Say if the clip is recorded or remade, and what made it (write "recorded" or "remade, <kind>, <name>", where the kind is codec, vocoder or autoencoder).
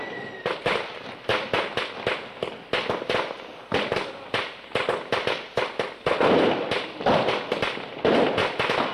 recorded